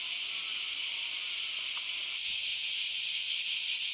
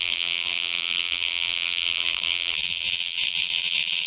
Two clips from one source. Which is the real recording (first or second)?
first